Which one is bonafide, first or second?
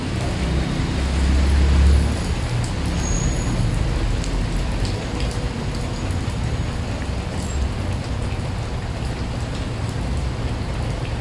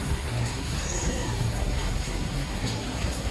first